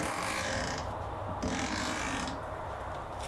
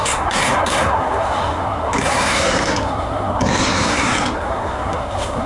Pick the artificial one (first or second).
second